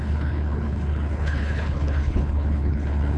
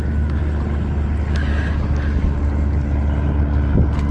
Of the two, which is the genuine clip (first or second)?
second